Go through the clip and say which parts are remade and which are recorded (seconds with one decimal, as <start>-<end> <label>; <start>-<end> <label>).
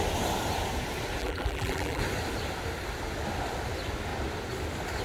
0.0-1.2 recorded; 1.2-2.0 remade; 2.0-5.0 recorded